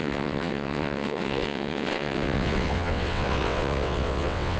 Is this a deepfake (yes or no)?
yes